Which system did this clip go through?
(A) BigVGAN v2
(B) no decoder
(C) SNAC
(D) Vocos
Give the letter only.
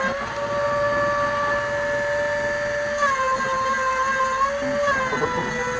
B